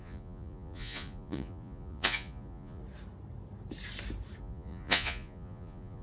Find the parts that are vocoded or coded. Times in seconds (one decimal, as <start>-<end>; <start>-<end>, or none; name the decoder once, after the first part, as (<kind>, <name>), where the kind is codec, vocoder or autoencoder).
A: 0.0-2.8 (vocoder, Vocos); 4.4-6.0